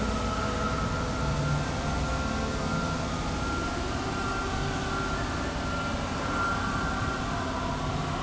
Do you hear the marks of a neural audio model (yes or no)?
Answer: no